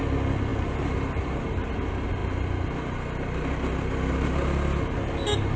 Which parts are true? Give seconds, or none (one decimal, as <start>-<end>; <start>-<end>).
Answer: 0.0-5.6

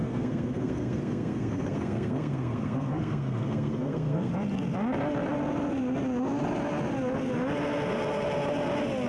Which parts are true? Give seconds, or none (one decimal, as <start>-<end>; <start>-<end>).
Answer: 4.3-9.1

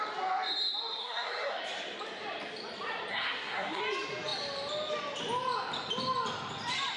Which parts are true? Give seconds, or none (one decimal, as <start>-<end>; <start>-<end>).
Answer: 0.0-1.0; 1.6-3.1; 3.8-7.0

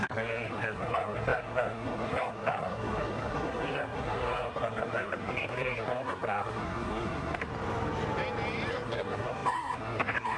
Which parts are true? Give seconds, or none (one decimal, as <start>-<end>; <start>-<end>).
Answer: 7.5-8.7